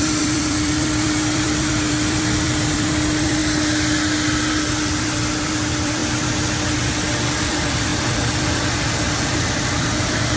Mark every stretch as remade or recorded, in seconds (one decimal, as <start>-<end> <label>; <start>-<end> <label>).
0.0-3.4 remade; 3.4-4.5 recorded; 4.5-6.0 remade; 6.0-7.3 recorded; 7.3-10.4 remade